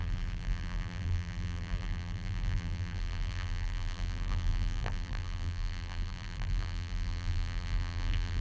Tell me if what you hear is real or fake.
fake